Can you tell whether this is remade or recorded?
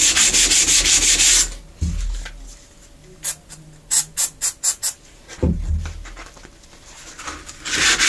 recorded